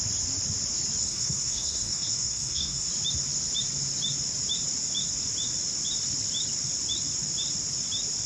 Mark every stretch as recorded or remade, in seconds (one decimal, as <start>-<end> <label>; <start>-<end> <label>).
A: 0.0-1.0 recorded; 1.0-2.9 remade; 2.9-8.3 recorded